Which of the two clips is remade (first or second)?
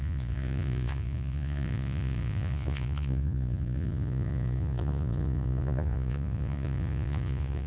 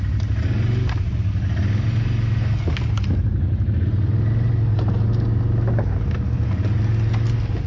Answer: first